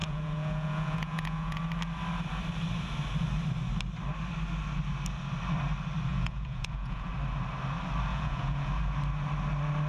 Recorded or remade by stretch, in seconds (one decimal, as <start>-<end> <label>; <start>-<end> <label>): 0.0-1.6 remade; 1.6-6.1 recorded; 6.1-7.1 remade; 7.1-8.1 recorded; 8.1-8.7 remade; 8.7-9.9 recorded